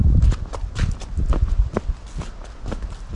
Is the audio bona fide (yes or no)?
yes